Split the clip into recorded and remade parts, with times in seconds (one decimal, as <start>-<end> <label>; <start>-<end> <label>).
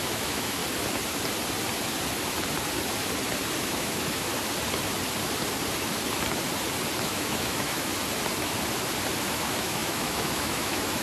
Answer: 0.0-0.6 remade; 0.6-3.6 recorded; 3.6-4.3 remade; 4.3-7.0 recorded; 7.0-7.9 remade; 7.9-9.3 recorded; 9.3-11.0 remade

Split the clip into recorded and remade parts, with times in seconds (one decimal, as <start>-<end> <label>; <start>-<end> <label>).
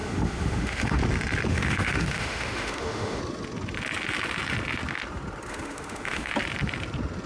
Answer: 0.0-1.0 remade; 1.0-1.5 recorded; 1.5-3.2 remade; 3.2-5.5 recorded; 5.5-6.3 remade; 6.3-7.3 recorded